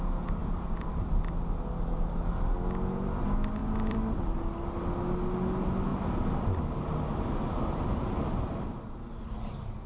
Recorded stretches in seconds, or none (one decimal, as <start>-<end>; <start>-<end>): 0.0-0.4; 1.4-3.6; 4.2-5.9; 8.9-9.9